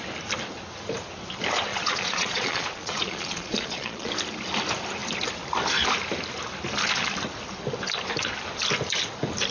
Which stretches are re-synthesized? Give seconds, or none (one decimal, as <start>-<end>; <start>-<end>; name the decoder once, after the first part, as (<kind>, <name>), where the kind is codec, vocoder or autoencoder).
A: 1.7-4.1 (vocoder, Vocos)